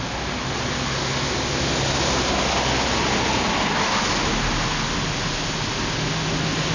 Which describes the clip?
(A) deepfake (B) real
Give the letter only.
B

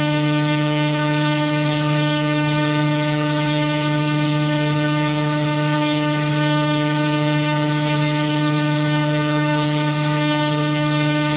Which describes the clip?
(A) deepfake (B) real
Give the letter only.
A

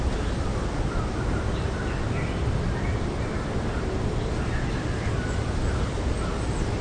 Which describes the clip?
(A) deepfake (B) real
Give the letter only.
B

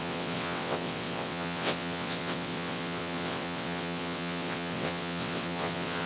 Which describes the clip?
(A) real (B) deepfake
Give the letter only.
B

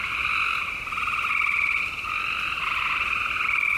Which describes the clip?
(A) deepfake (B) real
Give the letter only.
A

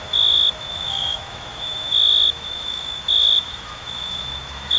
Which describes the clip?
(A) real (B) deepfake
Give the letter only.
B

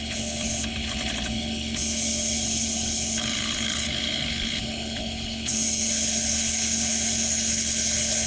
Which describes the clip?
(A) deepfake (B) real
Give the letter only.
A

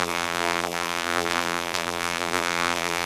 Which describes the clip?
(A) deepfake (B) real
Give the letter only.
A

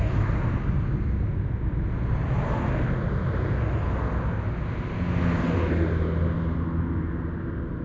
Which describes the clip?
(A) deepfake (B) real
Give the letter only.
B